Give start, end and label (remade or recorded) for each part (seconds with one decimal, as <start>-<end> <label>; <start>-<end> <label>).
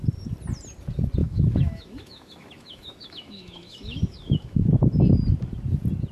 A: 0.0-1.2 recorded; 1.2-4.7 remade; 4.7-6.1 recorded